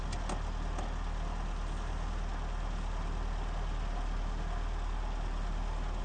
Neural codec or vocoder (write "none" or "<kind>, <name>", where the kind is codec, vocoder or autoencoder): none